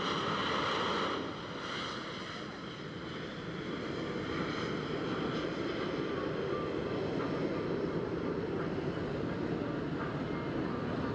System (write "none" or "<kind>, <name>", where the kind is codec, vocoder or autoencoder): none